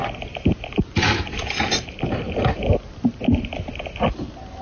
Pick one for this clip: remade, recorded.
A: recorded